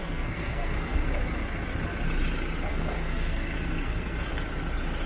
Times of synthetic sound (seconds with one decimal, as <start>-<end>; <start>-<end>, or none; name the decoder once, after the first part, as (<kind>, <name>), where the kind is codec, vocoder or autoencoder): 0.0-1.1 (codec, SNAC); 2.7-4.3